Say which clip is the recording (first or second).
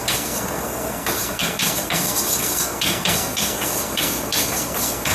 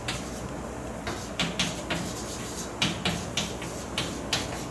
second